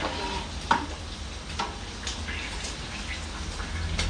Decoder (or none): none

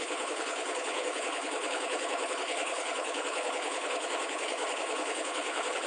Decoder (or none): codec, HILCodec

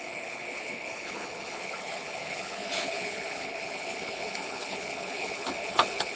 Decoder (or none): codec, HILCodec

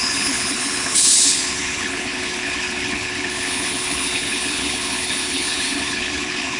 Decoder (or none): codec, HILCodec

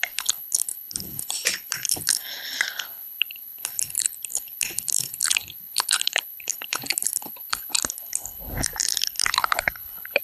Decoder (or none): codec, HILCodec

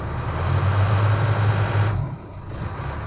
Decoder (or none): none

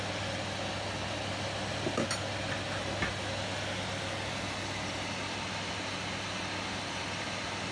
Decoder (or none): none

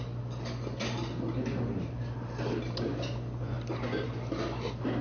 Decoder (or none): none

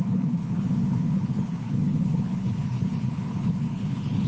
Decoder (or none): codec, HILCodec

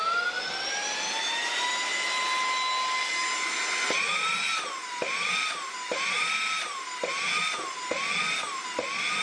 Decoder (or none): none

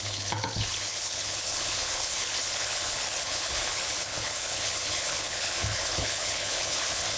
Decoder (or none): codec, HILCodec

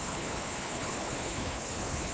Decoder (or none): codec, HILCodec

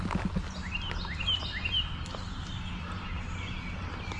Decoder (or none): none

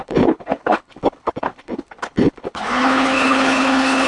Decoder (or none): codec, HILCodec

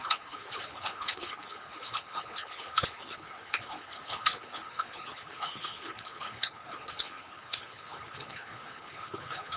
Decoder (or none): codec, HILCodec